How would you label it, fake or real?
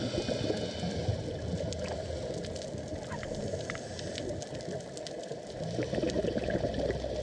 real